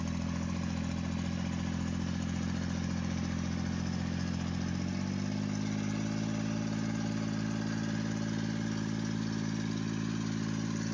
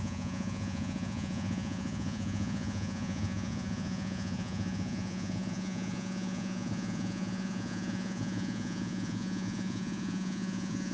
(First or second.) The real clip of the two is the first